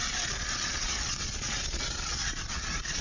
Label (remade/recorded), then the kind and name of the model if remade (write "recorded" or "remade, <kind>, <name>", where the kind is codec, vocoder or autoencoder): remade, vocoder, Vocos